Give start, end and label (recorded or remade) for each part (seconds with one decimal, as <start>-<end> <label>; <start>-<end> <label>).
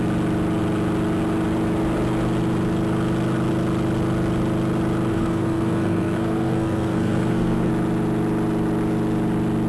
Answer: 0.0-5.1 recorded; 5.1-7.7 remade; 7.7-9.7 recorded